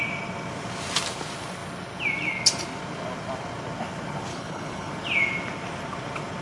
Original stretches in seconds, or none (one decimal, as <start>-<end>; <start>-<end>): 0.0-4.3; 4.9-6.4